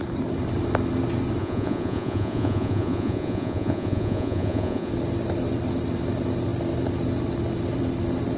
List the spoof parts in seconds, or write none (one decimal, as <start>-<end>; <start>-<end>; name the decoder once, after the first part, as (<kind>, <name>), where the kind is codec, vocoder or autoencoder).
1.4-4.9 (vocoder, Vocos)